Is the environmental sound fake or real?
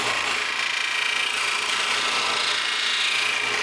real